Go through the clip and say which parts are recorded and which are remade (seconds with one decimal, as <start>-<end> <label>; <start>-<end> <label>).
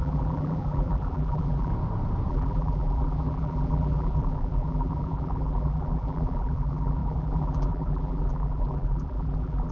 0.0-1.7 remade; 1.7-2.3 recorded; 2.3-9.7 remade